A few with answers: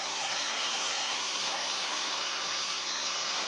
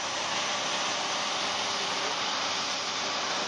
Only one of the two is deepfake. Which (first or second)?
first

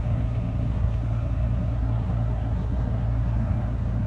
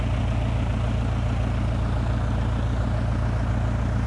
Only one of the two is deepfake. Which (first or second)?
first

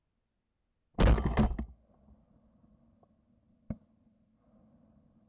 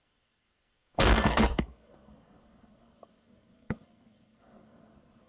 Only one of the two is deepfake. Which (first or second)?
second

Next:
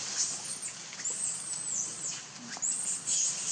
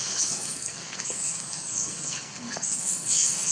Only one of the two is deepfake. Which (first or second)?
second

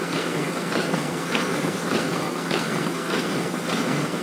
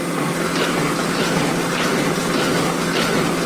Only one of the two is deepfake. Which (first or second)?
first